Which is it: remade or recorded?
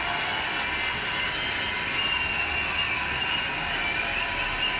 recorded